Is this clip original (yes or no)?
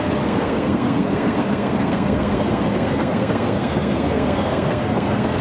no